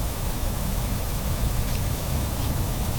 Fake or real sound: fake